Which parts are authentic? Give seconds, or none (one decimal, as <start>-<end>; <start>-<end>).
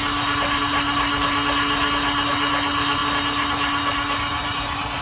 0.0-5.0